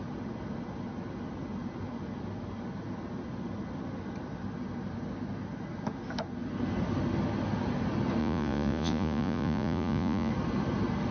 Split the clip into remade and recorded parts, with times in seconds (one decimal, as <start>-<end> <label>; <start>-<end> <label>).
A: 0.0-8.2 recorded; 8.2-10.3 remade; 10.3-11.1 recorded